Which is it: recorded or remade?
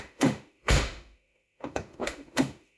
remade